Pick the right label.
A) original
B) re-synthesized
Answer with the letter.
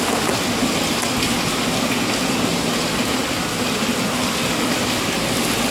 A